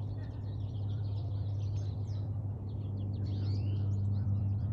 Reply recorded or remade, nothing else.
remade